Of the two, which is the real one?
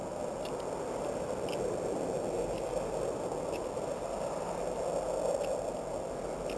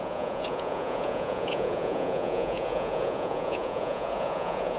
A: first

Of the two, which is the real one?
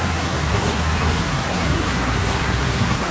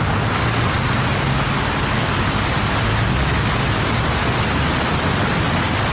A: second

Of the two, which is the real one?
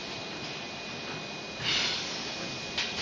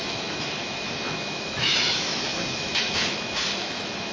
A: first